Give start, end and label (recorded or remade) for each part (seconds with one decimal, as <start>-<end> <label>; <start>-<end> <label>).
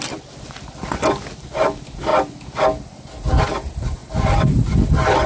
0.0-5.3 recorded